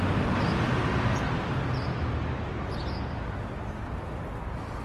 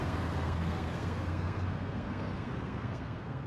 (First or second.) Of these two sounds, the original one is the first